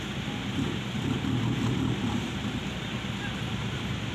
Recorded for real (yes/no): yes